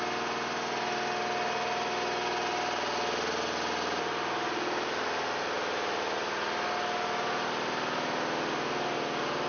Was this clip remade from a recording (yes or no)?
no